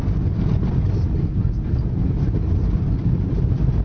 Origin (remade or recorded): recorded